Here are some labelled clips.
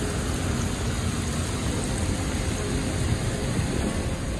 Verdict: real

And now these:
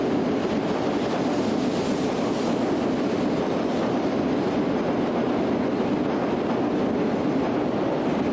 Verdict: real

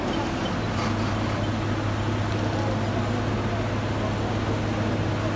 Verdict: real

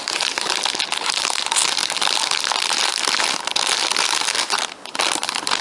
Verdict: real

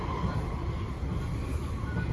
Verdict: real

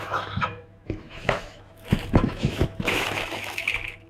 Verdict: fake